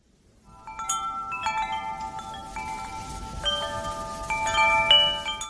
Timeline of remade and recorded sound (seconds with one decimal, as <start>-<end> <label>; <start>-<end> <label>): 0.0-5.5 recorded